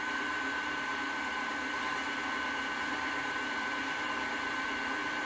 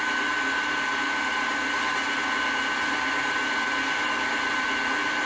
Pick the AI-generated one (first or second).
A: first